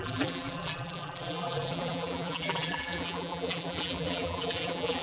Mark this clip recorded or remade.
remade